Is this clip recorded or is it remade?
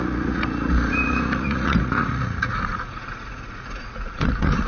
remade